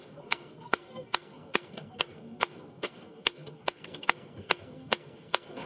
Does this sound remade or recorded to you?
remade